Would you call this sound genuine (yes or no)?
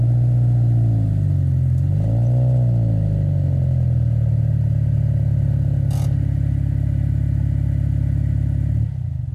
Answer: yes